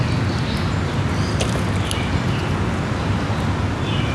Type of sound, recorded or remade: recorded